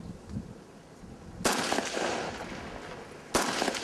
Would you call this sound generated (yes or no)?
no